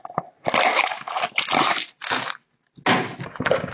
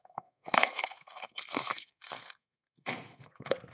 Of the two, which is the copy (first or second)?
second